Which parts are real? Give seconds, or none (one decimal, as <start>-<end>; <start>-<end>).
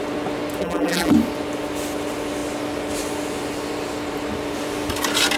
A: 0.0-0.6; 1.1-5.4